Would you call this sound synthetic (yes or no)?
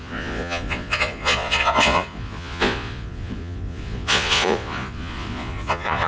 yes